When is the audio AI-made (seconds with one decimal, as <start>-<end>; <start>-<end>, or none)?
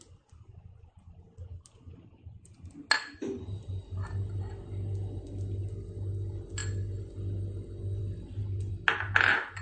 none